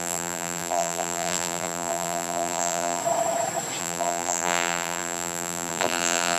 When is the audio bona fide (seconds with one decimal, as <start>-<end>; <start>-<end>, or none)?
3.0-3.8